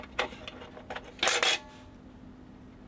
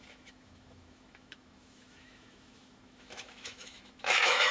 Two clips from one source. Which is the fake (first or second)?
second